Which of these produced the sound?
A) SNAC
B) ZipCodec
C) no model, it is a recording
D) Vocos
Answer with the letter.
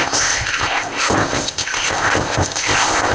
B